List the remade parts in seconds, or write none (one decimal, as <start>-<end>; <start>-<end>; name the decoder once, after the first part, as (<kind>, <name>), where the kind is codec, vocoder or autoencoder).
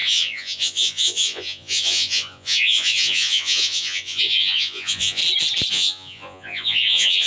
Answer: 0.0-5.2 (vocoder, Vocos); 5.7-7.3